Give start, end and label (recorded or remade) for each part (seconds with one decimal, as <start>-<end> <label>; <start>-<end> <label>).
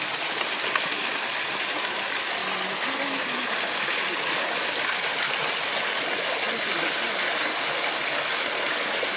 0.0-9.2 recorded